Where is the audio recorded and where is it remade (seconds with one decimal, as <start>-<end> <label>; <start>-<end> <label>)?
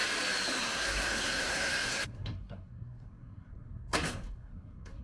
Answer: 0.0-0.6 recorded; 0.6-5.0 remade